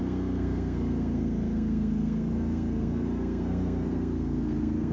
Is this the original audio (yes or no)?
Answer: no